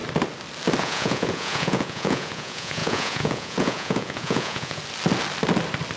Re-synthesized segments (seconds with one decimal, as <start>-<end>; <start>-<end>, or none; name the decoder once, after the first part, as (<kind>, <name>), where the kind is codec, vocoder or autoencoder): 0.8-4.8 (vocoder, Vocos)